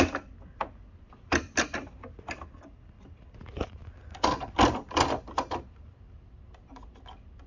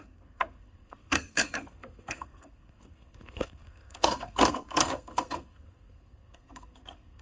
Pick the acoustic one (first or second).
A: first